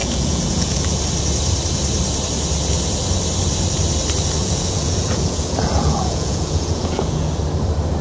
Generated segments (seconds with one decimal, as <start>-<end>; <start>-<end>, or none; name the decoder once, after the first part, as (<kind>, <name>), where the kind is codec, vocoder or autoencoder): 0.0-1.0 (vocoder, Vocos); 4.4-7.3